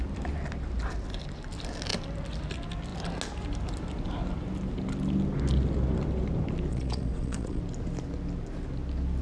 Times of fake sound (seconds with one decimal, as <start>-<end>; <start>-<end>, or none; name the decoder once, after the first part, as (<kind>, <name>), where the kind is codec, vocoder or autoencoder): 6.7-7.6 (vocoder, Vocos)